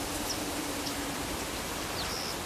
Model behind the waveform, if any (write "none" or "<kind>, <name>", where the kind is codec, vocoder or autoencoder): none